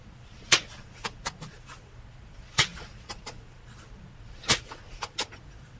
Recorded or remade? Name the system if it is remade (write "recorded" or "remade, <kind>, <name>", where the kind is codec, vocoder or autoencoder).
remade, vocoder, Vocos